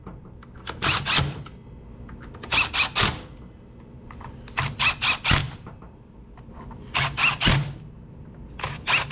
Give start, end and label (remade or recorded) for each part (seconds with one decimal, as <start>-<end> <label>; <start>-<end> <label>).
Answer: 0.0-5.4 recorded; 5.4-6.5 remade; 6.5-9.1 recorded